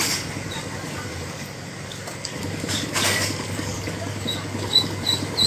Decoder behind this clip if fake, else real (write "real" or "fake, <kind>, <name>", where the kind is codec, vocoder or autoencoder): fake, codec, DAC